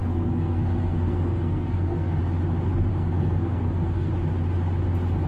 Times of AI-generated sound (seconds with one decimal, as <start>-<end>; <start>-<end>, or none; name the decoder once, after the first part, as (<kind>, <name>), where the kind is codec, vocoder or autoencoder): 0.0-2.2 (codec, SNAC); 2.9-4.1